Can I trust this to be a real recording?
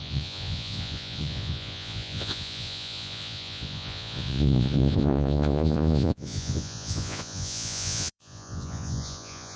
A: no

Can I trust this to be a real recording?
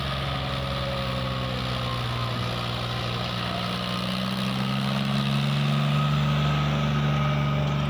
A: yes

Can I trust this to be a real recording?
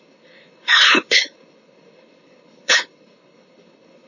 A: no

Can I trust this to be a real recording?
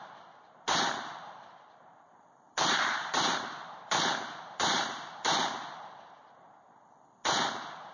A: yes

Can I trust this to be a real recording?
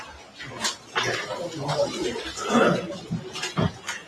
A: yes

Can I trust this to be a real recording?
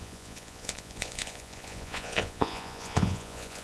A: no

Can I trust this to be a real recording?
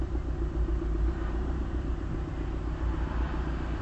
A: yes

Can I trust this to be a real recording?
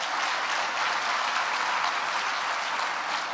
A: yes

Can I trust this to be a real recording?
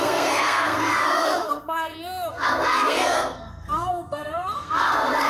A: no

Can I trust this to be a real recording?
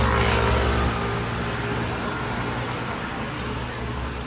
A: yes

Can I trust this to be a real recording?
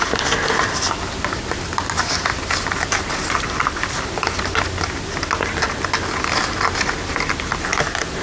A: yes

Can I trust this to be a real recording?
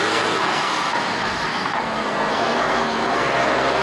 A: no